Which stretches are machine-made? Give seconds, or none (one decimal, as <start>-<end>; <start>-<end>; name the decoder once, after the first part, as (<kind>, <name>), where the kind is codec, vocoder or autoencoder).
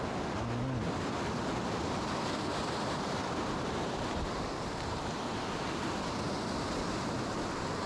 2.5-5.4 (vocoder, BigVGAN v2)